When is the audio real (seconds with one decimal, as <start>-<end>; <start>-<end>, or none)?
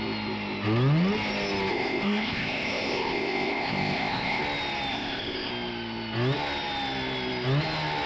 0.0-1.7; 4.4-4.9; 5.5-8.1